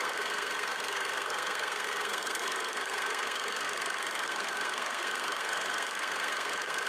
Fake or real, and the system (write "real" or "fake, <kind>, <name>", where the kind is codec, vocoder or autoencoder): fake, codec, SNAC